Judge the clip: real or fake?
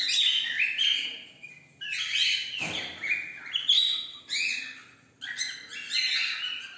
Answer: real